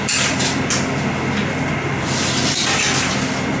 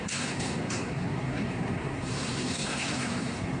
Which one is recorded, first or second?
first